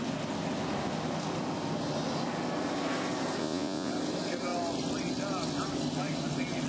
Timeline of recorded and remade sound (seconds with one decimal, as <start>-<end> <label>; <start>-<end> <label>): 0.0-3.4 recorded; 3.4-3.9 remade; 3.9-6.7 recorded